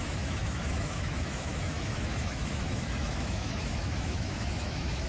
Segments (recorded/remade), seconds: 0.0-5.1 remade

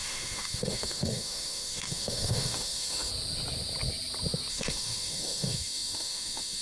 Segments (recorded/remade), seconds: 0.0-3.1 remade; 3.1-4.5 recorded; 4.5-6.6 remade

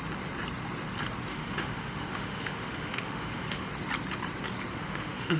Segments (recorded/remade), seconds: 0.0-1.3 recorded; 1.3-3.7 remade; 3.7-4.7 recorded; 4.7-5.4 remade

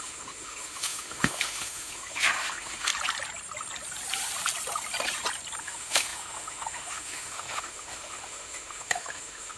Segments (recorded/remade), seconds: 0.0-2.9 remade; 2.9-5.6 recorded; 5.6-9.6 remade

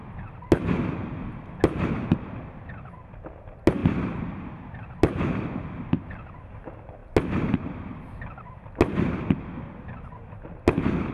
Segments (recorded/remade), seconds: 0.0-11.1 recorded